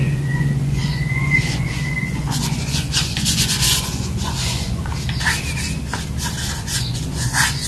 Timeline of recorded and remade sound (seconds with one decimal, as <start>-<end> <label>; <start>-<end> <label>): 0.0-4.9 remade; 4.9-6.6 recorded; 6.6-7.7 remade